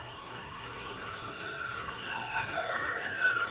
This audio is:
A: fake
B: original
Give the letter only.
A